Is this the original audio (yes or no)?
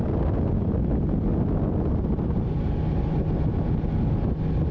yes